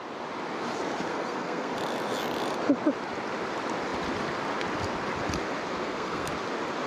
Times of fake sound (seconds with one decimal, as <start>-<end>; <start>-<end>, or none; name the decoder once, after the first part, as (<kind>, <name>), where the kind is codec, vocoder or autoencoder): 1.1-1.7 (codec, SNAC); 5.8-6.3